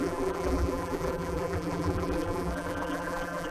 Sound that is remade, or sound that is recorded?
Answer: remade